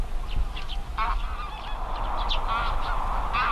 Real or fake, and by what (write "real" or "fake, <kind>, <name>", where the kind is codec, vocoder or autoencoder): real